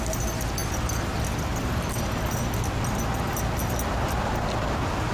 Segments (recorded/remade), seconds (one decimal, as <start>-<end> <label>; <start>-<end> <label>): 0.0-5.1 recorded